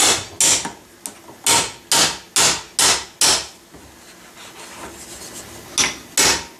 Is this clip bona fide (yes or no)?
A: yes